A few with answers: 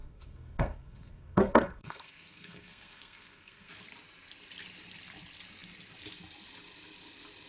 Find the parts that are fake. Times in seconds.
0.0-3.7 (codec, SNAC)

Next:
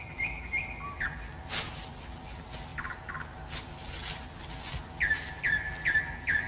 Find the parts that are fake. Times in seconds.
none

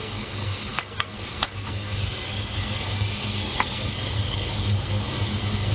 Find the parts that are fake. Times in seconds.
0.0-5.7 (codec, SNAC)

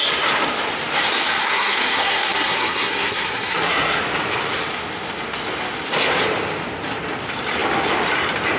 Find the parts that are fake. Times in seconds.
1.4-4.0 (codec, SNAC)

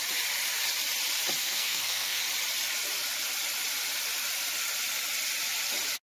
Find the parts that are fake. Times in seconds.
1.4-2.2 (codec, SNAC)

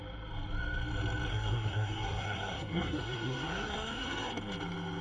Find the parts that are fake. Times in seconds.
1.3-4.3 (codec, SNAC)

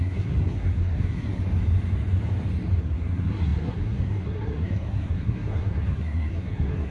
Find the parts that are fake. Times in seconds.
0.0-1.4 (codec, SNAC); 2.8-6.9